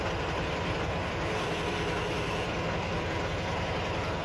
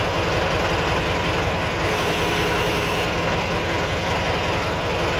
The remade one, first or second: first